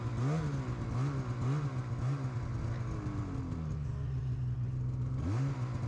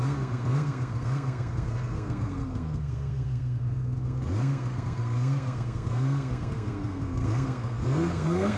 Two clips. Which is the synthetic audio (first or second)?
second